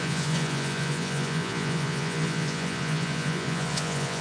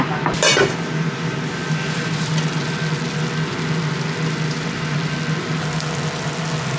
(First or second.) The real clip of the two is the second